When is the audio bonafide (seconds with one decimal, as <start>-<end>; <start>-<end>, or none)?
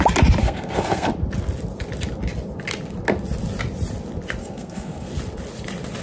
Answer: 0.0-0.4; 1.1-4.4; 5.1-6.0